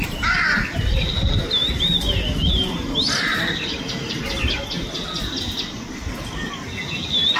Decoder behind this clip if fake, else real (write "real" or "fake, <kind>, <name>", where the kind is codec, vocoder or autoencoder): real